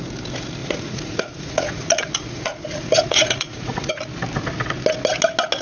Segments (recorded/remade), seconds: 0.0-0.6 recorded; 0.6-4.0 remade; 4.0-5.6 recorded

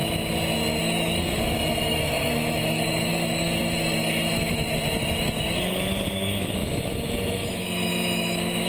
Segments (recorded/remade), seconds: 0.0-0.8 recorded; 0.8-8.7 remade

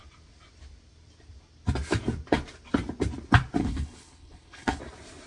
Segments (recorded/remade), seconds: 0.0-3.6 recorded; 3.6-4.8 remade; 4.8-5.3 recorded

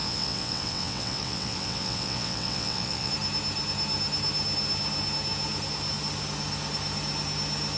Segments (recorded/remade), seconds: 0.0-3.1 remade; 3.1-7.8 recorded

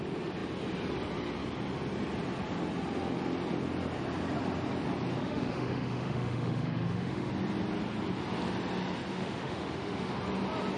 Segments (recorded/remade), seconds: 0.0-5.2 recorded; 5.2-7.3 remade; 7.3-9.1 recorded; 9.1-10.2 remade; 10.2-10.8 recorded

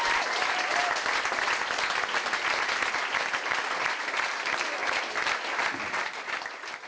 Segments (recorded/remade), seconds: 0.0-0.8 remade; 0.8-3.0 recorded; 3.0-4.8 remade; 4.8-5.4 recorded; 5.4-6.9 remade

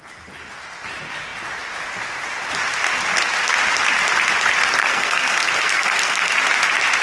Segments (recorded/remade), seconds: 0.0-4.8 recorded; 4.8-6.3 remade; 6.3-7.0 recorded

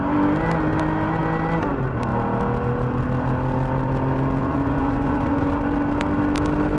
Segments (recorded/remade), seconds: 0.0-4.4 recorded; 4.4-5.5 remade; 5.5-6.8 recorded